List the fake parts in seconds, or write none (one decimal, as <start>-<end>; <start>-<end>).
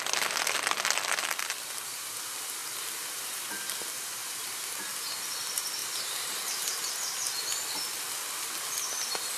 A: 4.2-4.8; 5.8-6.9